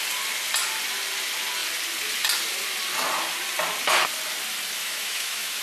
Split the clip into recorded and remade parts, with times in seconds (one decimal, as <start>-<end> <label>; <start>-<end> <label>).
0.0-4.8 recorded; 4.8-5.6 remade